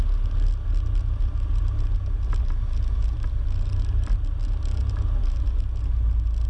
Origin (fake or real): real